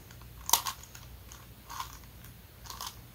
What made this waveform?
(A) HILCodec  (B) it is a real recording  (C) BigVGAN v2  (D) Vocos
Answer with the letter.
B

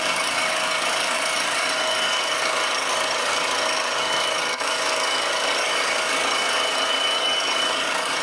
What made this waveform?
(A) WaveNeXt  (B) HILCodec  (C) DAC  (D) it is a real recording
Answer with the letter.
C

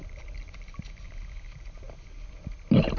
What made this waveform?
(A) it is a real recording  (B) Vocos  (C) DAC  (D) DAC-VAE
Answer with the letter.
A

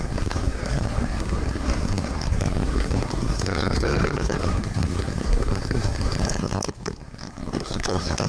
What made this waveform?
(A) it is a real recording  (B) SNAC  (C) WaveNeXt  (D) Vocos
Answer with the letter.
B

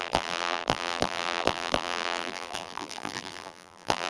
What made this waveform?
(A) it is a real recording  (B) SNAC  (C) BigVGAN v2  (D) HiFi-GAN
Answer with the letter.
C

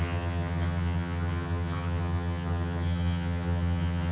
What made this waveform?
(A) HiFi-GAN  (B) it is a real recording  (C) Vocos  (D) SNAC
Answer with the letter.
A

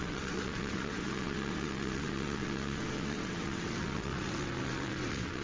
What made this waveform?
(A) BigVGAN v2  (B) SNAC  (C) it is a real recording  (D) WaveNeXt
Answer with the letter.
D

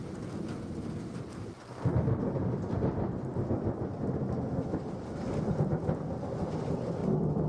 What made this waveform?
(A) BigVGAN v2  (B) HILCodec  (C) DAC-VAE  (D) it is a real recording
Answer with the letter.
D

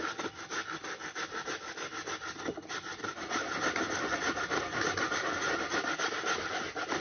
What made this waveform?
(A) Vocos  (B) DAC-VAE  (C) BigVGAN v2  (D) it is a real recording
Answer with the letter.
D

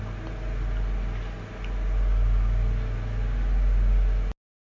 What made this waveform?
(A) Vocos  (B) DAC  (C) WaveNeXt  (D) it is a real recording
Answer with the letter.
D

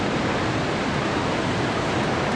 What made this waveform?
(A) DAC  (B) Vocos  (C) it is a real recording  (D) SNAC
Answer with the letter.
C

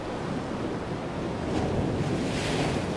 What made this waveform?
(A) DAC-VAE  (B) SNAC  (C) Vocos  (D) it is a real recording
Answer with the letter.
D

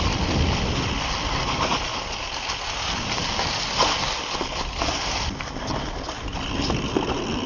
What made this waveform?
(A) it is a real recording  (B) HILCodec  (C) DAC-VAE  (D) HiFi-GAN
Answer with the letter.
A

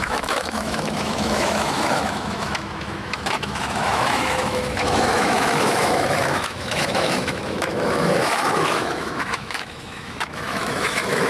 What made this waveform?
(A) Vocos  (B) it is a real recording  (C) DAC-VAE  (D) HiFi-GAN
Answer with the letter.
C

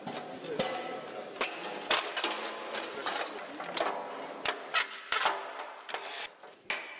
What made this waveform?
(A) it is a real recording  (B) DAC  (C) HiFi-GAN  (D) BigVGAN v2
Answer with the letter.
A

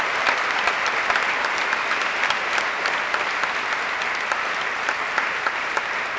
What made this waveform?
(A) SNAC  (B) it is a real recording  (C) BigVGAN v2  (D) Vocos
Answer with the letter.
B